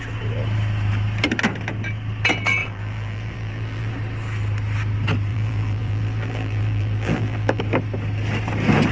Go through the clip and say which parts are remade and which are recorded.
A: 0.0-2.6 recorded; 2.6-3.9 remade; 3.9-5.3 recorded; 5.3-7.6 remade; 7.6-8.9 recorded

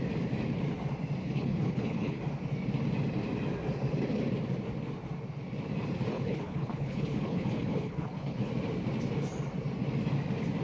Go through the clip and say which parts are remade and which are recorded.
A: 0.0-1.2 recorded; 1.2-2.2 remade; 2.2-6.1 recorded; 6.1-8.5 remade; 8.5-10.6 recorded

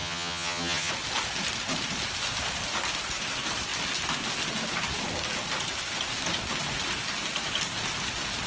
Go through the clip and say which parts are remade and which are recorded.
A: 0.0-0.9 remade; 0.9-8.5 recorded

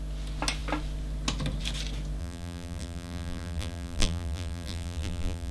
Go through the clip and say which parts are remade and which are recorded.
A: 0.0-2.2 recorded; 2.2-5.5 remade

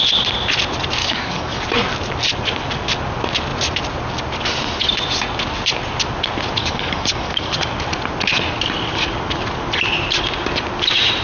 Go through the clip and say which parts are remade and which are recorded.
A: 0.0-1.0 recorded; 1.0-1.6 remade; 1.6-6.6 recorded; 6.6-7.6 remade; 7.6-11.2 recorded